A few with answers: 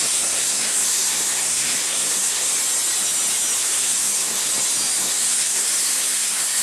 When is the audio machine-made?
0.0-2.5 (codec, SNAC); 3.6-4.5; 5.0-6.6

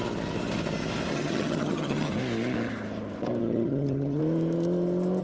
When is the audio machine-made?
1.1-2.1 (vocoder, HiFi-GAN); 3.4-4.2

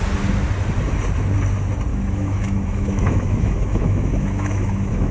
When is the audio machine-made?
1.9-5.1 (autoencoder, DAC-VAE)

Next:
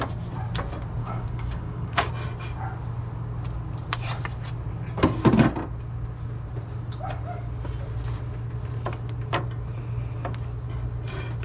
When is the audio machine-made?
1.0-2.1 (codec, DAC)

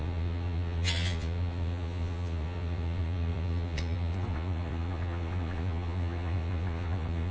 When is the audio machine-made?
0.0-7.3 (vocoder, Vocos)

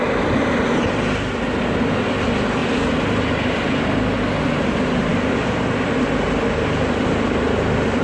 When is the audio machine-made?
none

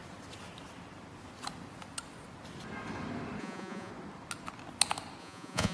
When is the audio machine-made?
3.4-3.9 (vocoder, Vocos); 5.2-5.7